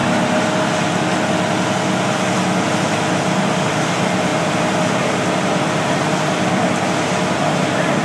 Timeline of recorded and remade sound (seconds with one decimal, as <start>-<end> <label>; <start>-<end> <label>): 0.0-2.9 recorded; 2.9-8.0 remade